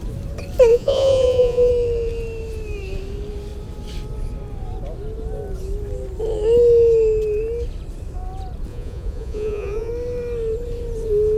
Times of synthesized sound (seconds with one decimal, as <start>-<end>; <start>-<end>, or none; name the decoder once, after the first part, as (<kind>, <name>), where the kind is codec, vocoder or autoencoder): 0.7-1.7 (vocoder, Vocos); 8.7-9.9